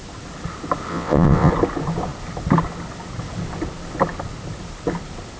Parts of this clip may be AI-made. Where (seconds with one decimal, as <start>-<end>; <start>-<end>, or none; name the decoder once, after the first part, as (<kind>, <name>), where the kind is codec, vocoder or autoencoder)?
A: 0.9-1.5 (vocoder, WaveNeXt)